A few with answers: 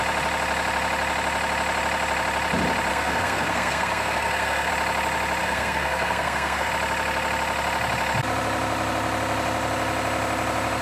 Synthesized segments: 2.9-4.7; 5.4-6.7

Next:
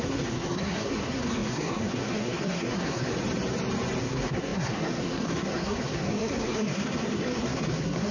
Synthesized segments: 0.0-3.1; 4.0-8.1

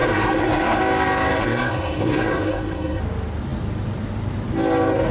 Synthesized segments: 0.0-0.8; 1.4-3.0